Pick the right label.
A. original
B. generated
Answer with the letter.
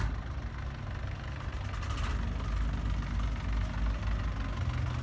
A